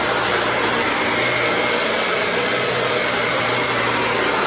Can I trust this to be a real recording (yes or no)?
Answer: no